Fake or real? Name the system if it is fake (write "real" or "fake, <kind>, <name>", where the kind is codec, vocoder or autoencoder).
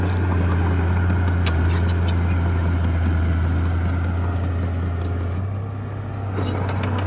real